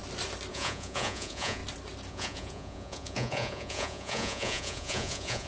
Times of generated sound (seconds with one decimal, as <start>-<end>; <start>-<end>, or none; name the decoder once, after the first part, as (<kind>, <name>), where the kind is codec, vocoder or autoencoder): 0.5-1.6 (vocoder, Vocos); 2.1-5.5